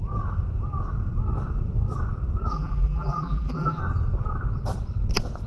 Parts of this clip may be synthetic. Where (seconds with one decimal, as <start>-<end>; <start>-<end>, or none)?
2.5-3.8